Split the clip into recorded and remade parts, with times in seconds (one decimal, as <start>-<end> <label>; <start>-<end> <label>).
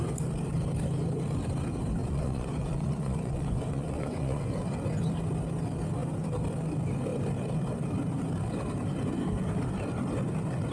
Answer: 0.0-2.0 recorded; 2.0-4.5 remade; 4.5-10.7 recorded